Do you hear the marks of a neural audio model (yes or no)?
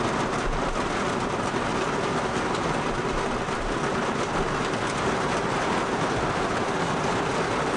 no